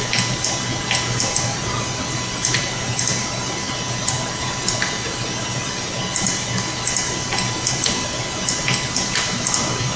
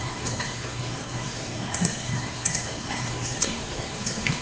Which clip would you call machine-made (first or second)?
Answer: second